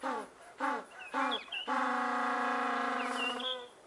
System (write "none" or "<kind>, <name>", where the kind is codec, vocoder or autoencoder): vocoder, BigVGAN v2